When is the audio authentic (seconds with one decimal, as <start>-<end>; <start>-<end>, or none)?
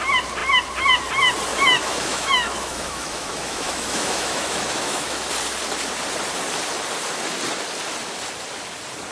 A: 0.0-1.5; 5.3-9.1